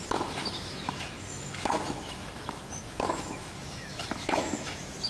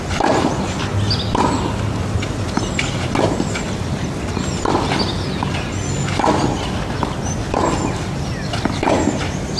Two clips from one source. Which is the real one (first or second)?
second